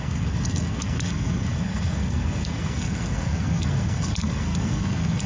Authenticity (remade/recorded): remade